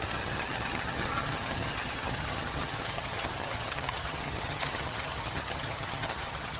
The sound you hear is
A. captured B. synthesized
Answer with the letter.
B